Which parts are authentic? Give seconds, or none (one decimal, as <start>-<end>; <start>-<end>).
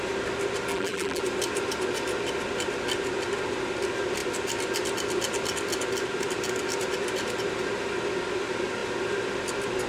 0.0-0.7; 1.2-9.9